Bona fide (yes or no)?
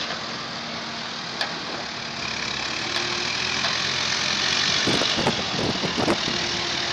yes